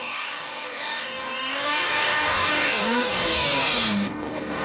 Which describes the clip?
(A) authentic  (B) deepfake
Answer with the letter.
B